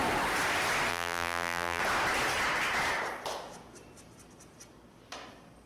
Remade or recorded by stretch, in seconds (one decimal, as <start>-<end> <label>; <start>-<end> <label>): 0.0-0.9 recorded; 0.9-1.8 remade; 1.8-5.7 recorded